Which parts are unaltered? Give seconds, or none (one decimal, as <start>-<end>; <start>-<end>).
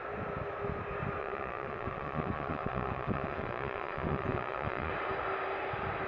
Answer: 0.0-1.2; 4.9-6.1